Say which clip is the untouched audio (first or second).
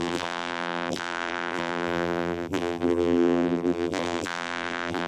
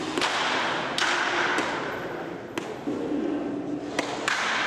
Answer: second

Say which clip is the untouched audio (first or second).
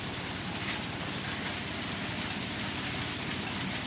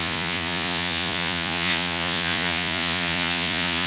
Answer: first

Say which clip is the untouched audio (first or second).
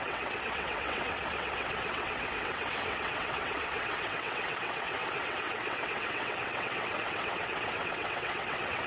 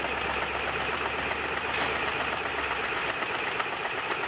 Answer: second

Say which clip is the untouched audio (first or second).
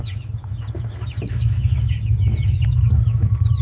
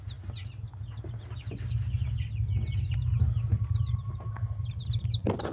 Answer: second